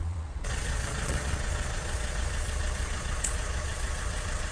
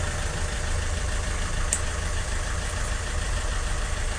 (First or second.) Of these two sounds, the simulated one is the first